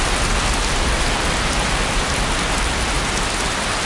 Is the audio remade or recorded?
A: recorded